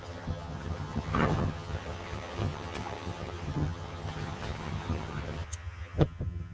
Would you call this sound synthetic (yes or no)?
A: yes